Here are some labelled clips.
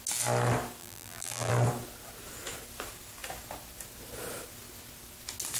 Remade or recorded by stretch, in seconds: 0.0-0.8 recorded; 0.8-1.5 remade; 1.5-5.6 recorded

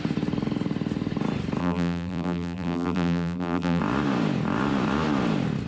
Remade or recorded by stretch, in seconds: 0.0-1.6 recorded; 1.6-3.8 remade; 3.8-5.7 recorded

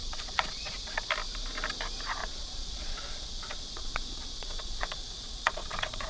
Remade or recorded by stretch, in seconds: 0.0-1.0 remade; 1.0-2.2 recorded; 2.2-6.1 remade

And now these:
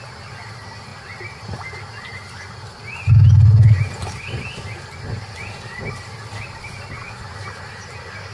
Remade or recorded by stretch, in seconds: 0.0-8.3 recorded

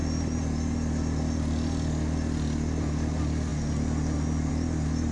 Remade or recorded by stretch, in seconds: 0.0-5.1 recorded

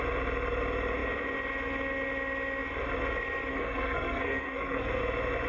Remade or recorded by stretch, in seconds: 0.0-3.5 recorded; 3.5-5.0 remade; 5.0-5.5 recorded

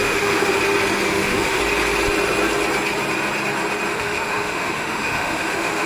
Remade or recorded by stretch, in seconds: 0.0-0.6 remade; 0.6-1.1 recorded; 1.1-1.6 remade; 1.6-3.9 recorded; 3.9-5.9 remade

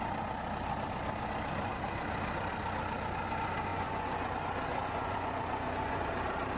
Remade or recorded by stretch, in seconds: 0.0-3.7 recorded; 3.7-4.3 remade; 4.3-4.7 recorded; 4.7-6.1 remade; 6.1-6.6 recorded